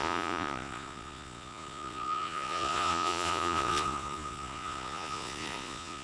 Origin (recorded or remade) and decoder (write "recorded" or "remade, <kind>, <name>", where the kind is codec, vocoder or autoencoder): remade, vocoder, Vocos